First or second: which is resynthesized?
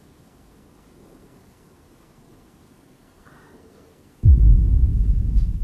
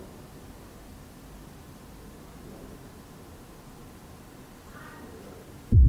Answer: first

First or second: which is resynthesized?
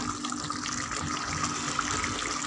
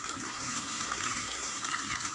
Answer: second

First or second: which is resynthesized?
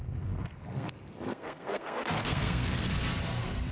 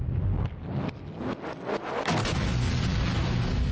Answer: first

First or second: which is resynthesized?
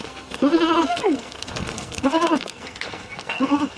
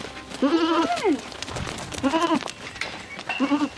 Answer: first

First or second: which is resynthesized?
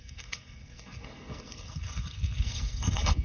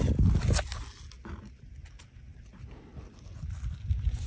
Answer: first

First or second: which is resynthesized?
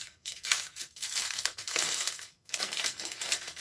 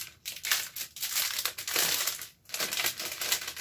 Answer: first